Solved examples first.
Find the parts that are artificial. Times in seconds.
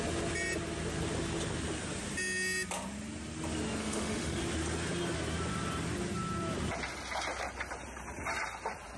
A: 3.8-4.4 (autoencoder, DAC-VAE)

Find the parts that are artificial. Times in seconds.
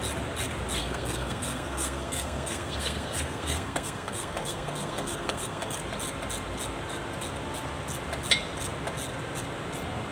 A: 0.8-5.8 (codec, SNAC)